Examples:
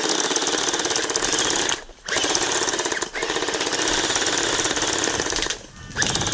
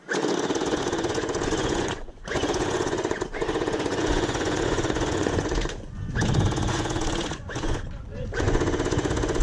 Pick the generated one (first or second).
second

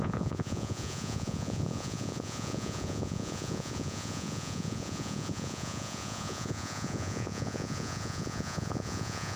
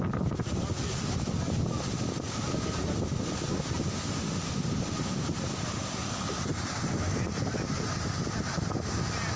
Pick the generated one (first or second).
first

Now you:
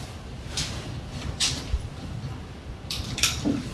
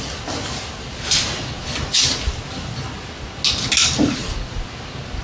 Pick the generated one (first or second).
first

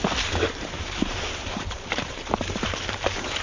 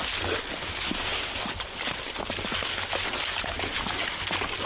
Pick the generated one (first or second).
first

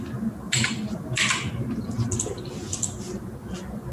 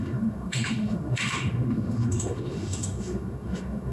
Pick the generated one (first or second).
second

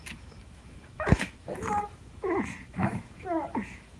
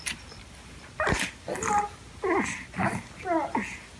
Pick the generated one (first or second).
first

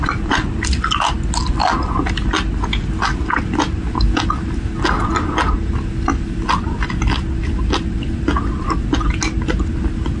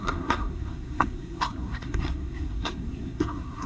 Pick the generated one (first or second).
second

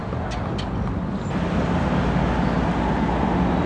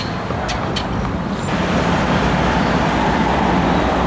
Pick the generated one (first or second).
second